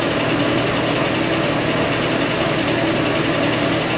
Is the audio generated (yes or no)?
no